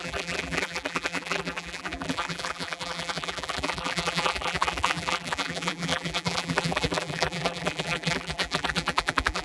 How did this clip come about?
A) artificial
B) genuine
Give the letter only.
A